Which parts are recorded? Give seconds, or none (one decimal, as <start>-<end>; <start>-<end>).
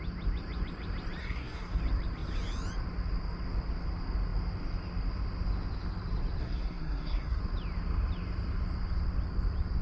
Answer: 0.0-1.2; 1.8-6.4; 7.4-9.8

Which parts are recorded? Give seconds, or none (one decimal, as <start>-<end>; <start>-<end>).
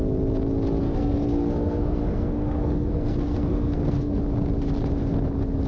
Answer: 0.0-0.8; 4.2-5.7